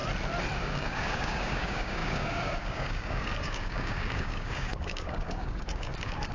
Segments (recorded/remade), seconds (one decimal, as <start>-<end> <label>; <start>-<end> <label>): 0.0-0.6 recorded; 0.6-6.3 remade